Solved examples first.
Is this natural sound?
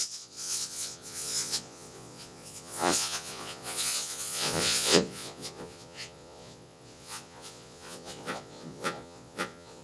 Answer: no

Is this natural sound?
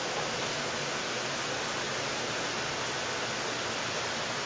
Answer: yes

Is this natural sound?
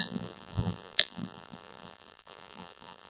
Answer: no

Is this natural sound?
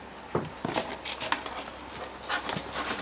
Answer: yes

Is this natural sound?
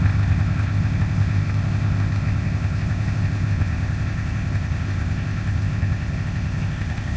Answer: no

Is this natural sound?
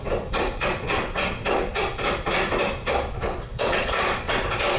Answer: no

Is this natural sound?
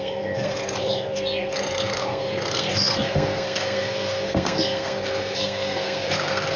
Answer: no